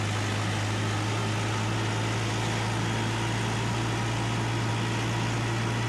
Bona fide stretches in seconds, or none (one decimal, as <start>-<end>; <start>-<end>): 0.0-5.9